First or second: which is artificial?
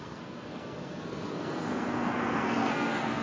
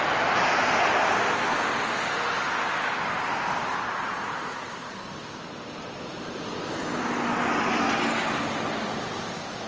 first